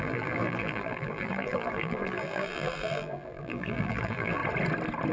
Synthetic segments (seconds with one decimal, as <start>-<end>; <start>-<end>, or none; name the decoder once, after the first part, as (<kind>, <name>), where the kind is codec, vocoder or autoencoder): 0.0-4.4 (vocoder, BigVGAN v2)